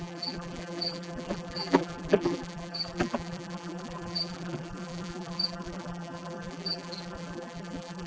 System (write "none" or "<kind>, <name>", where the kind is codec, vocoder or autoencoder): vocoder, BigVGAN v2